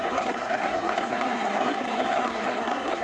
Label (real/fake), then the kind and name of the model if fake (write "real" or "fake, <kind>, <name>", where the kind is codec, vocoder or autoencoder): fake, codec, SNAC